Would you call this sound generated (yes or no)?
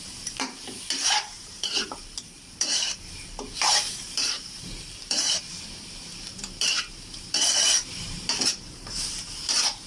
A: yes